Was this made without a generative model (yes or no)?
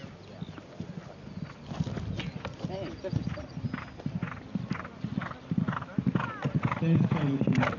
yes